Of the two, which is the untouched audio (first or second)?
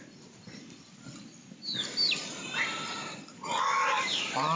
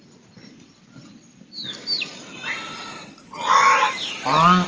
second